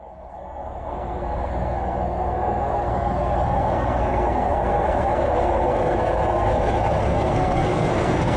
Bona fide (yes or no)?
no